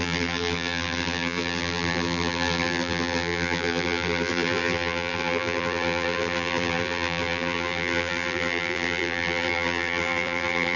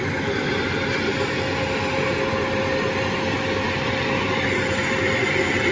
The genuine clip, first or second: second